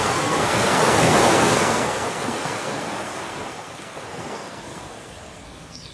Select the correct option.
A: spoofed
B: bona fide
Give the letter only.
A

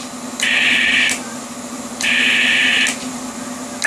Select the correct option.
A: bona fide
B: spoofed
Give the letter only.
A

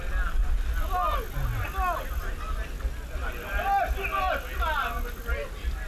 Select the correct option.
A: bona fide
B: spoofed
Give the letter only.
A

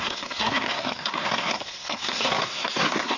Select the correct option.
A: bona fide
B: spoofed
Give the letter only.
B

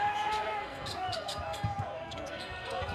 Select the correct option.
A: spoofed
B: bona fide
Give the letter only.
A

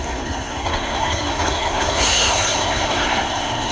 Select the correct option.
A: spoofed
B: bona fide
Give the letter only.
A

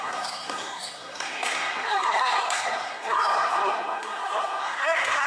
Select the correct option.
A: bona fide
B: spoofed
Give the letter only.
B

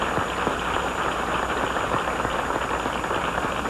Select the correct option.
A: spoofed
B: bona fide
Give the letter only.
B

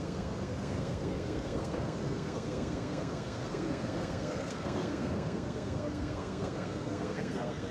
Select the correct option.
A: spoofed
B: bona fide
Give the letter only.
A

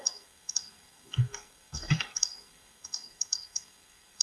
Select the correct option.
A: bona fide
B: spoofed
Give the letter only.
B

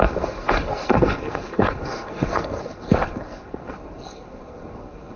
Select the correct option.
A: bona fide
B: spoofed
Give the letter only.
B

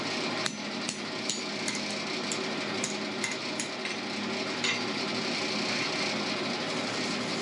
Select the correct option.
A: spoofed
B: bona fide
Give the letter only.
B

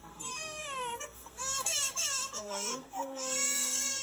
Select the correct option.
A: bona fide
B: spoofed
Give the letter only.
B